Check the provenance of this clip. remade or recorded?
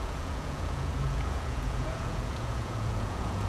remade